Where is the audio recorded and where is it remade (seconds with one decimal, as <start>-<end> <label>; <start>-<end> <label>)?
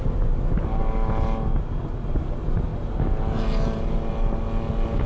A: 0.0-5.1 recorded